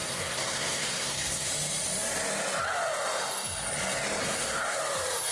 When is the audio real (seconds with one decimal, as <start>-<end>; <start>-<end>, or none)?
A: 1.5-4.2; 4.8-5.3